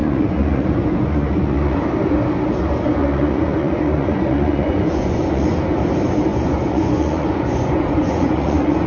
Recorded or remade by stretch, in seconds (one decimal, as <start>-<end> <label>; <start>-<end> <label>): 0.0-1.8 remade; 1.8-3.0 recorded; 3.0-5.6 remade; 5.6-6.3 recorded; 6.3-8.9 remade